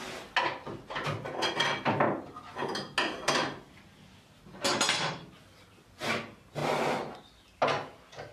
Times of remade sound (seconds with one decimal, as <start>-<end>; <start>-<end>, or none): none